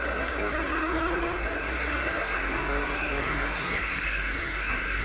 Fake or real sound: fake